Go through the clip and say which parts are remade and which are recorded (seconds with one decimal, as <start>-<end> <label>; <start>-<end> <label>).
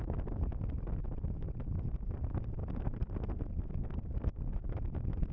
0.0-5.3 recorded